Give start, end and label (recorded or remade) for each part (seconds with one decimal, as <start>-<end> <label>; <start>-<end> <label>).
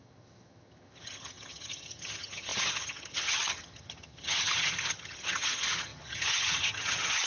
0.0-7.3 remade